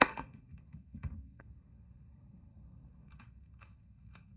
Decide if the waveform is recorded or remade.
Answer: remade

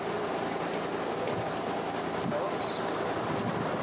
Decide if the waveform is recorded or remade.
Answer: recorded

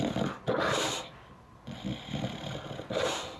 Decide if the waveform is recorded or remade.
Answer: recorded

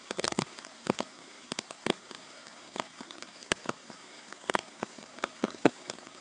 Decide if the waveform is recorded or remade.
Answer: remade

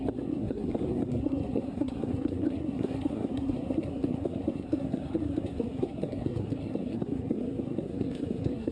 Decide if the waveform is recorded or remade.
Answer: remade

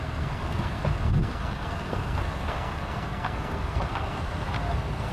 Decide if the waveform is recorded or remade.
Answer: remade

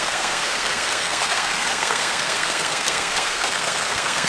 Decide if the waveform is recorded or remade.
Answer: remade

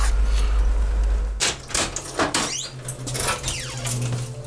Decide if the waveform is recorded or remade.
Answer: recorded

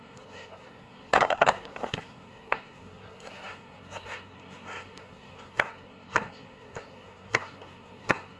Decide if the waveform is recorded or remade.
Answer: remade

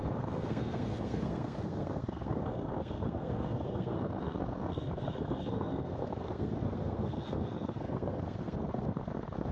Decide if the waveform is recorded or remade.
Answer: remade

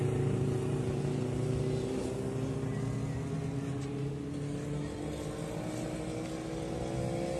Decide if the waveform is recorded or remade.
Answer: recorded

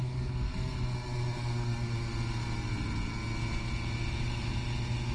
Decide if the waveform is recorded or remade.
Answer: recorded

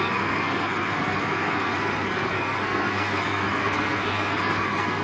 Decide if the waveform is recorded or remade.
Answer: remade